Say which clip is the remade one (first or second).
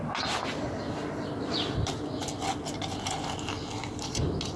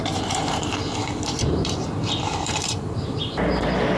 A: second